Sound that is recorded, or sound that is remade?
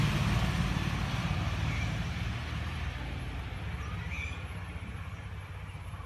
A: recorded